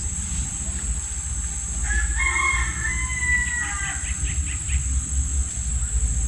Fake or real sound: real